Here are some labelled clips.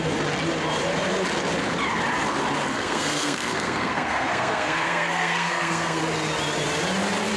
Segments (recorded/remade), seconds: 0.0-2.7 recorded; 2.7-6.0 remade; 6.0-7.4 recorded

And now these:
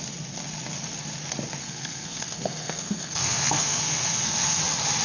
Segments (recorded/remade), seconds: 0.0-1.6 recorded; 1.6-4.6 remade; 4.6-5.0 recorded

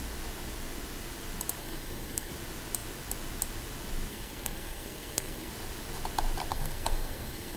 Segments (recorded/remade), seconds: 0.0-1.6 recorded; 1.6-2.3 remade; 2.3-4.1 recorded; 4.1-5.5 remade; 5.5-6.5 recorded; 6.5-7.6 remade

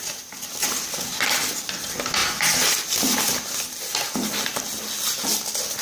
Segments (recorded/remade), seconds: 0.0-5.8 recorded

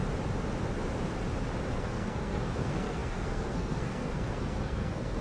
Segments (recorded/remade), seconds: 0.0-1.7 recorded; 1.7-5.2 remade

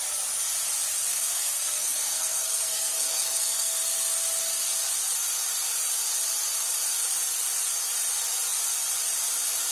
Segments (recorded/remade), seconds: 0.0-1.1 recorded; 1.1-3.8 remade; 3.8-9.7 recorded

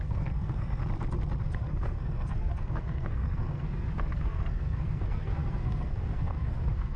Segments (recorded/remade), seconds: 0.0-0.8 remade; 0.8-1.4 recorded; 1.4-7.0 remade

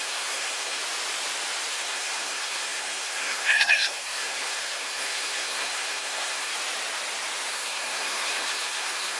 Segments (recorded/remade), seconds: 0.0-0.8 remade; 0.8-1.7 recorded; 1.7-6.5 remade; 6.5-7.5 recorded; 7.5-9.2 remade